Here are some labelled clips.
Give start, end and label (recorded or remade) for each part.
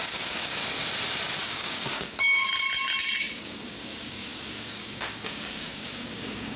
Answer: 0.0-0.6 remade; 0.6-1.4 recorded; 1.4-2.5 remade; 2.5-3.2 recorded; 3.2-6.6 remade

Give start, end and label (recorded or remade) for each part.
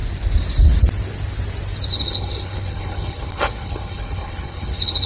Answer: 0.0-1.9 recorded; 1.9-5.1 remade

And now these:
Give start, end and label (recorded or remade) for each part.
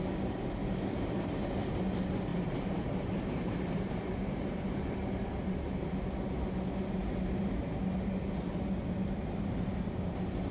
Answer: 0.0-0.6 recorded; 0.6-1.6 remade; 1.6-2.3 recorded; 2.3-5.6 remade; 5.6-10.5 recorded